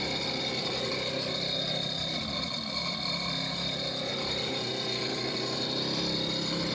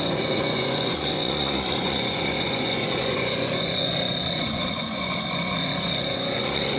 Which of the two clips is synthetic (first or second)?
second